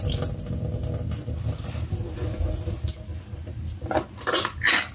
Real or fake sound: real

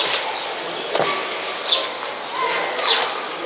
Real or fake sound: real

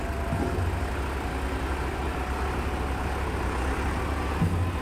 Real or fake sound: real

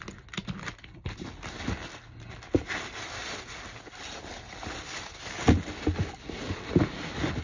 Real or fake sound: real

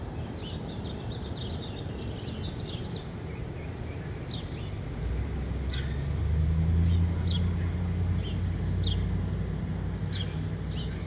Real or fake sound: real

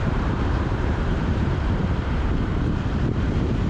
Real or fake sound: fake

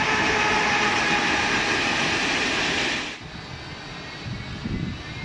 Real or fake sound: real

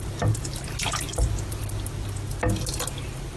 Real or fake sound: real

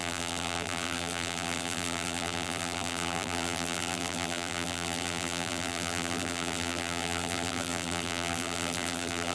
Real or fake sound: fake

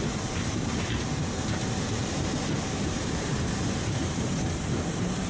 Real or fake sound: fake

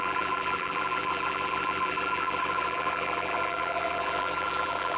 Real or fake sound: fake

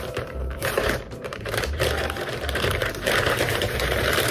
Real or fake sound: fake